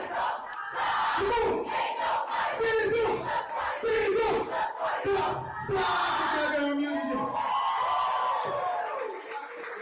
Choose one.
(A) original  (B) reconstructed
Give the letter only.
A